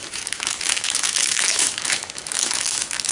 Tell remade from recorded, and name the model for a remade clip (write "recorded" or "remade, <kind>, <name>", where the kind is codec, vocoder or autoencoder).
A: remade, autoencoder, DAC-VAE